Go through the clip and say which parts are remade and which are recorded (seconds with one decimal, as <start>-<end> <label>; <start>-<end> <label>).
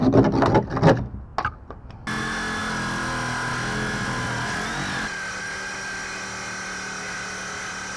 0.0-8.0 recorded